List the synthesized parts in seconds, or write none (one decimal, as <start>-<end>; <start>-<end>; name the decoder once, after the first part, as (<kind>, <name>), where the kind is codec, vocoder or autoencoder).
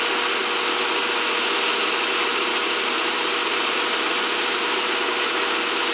2.3-5.9 (vocoder, BigVGAN v2)